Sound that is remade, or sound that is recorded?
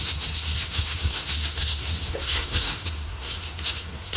remade